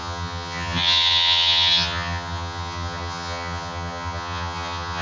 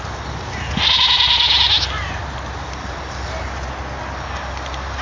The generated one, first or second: first